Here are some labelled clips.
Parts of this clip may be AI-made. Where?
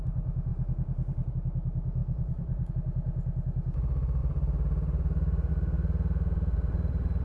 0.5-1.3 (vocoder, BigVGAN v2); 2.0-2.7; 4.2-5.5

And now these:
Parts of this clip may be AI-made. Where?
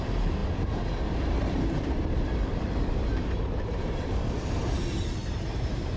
0.0-5.2 (vocoder, BigVGAN v2)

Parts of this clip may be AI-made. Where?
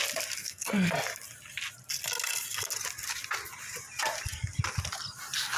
0.4-0.9 (codec, SNAC)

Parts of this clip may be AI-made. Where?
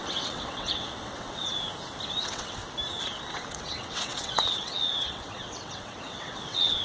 0.0-1.5 (vocoder, WaveNeXt); 2.2-2.6; 3.3-6.8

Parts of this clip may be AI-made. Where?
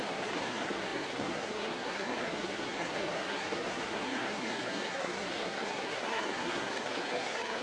0.0-7.6 (codec, SNAC)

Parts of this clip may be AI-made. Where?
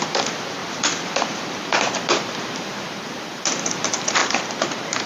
0.0-5.1 (vocoder, BigVGAN v2)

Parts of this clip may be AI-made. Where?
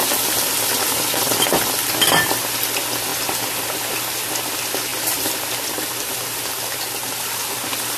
none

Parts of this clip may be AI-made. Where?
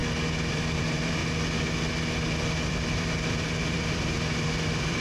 0.5-1.2 (vocoder, BigVGAN v2); 2.7-5.0